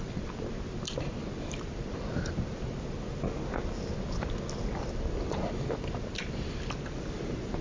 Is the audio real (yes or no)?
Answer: yes